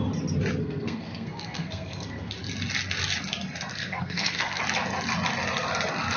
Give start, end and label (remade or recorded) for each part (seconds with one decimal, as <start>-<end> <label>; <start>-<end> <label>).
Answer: 0.0-0.6 recorded; 0.6-2.3 remade; 2.3-3.7 recorded; 3.7-4.6 remade; 4.6-6.2 recorded